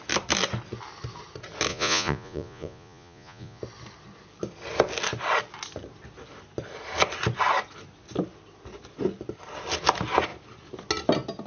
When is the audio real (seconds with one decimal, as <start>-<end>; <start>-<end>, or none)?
0.0-1.7; 3.6-11.5